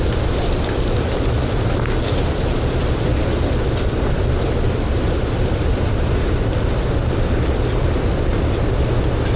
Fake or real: real